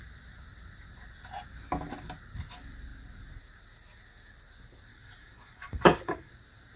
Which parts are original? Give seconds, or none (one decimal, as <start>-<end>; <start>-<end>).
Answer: 0.0-4.9; 6.3-6.8